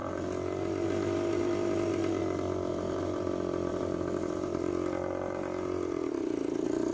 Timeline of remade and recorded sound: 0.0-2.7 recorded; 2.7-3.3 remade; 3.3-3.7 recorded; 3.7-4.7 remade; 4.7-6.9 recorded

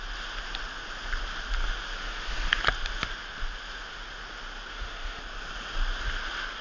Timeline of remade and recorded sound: 0.0-2.0 recorded; 2.0-2.6 remade; 2.6-4.7 recorded; 4.7-5.2 remade; 5.2-6.6 recorded

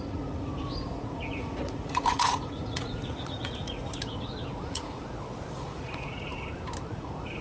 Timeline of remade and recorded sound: 0.0-3.8 remade; 3.8-4.6 recorded; 4.6-5.0 remade; 5.0-5.5 recorded; 5.5-6.3 remade; 6.3-6.9 recorded; 6.9-7.4 remade